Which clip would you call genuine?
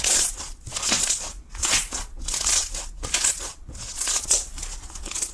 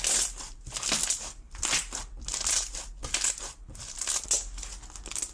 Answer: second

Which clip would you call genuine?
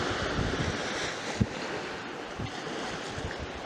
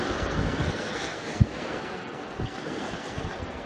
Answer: first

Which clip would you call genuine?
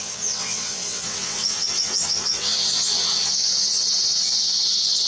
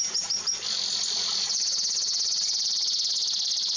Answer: second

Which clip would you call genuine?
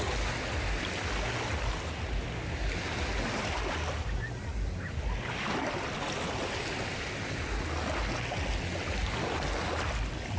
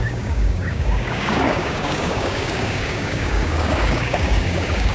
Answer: first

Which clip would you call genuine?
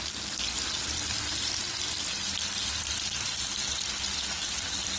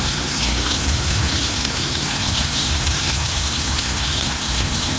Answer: first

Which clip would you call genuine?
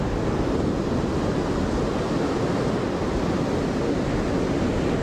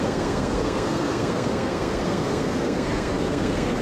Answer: first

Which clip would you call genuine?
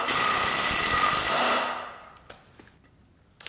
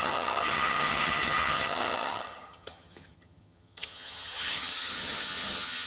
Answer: first